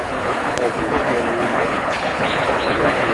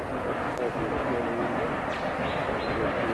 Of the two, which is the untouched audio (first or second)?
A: second